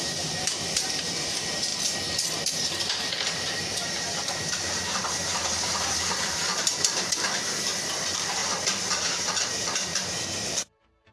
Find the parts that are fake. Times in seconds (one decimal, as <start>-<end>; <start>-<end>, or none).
0.0-1.7; 3.1-8.4; 9.2-11.1